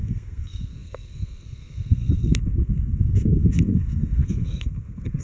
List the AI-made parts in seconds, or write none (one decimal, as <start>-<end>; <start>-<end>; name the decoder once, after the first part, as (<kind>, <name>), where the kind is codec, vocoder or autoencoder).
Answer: 0.0-5.2 (codec, SNAC)